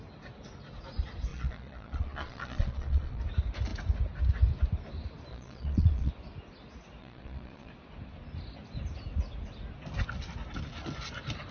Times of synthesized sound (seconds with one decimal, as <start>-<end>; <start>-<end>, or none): 1.3-3.2; 5.3-6.1; 7.0-7.7